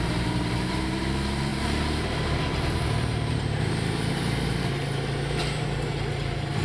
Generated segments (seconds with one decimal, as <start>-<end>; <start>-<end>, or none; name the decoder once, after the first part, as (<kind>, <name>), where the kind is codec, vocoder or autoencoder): 0.0-6.6 (vocoder, BigVGAN v2)